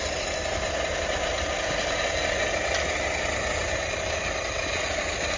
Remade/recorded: recorded